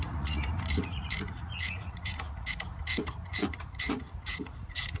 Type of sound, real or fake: fake